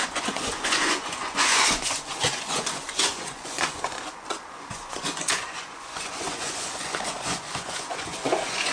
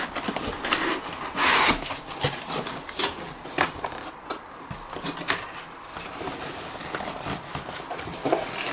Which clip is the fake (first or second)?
first